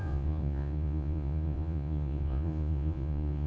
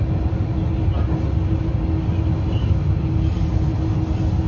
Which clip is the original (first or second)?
second